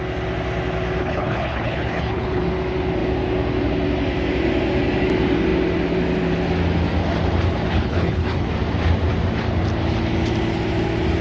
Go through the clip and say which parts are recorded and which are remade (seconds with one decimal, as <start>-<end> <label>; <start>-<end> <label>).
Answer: 0.0-1.0 recorded; 1.0-2.4 remade; 2.4-7.7 recorded; 7.7-8.5 remade; 8.5-11.2 recorded